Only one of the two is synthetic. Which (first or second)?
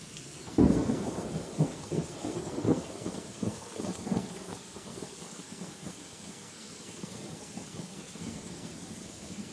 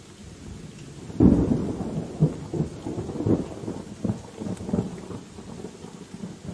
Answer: first